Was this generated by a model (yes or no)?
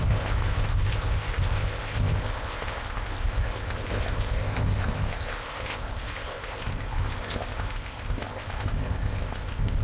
yes